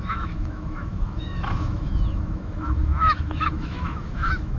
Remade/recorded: remade